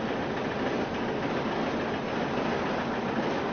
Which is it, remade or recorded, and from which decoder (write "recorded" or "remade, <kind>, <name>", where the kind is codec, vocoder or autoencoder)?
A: recorded